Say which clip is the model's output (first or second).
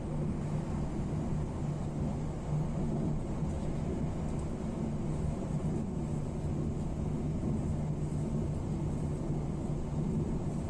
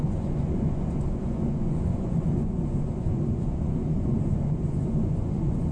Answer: second